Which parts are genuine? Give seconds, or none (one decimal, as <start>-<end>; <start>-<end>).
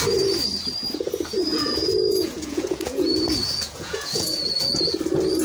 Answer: 0.0-1.5; 4.6-5.4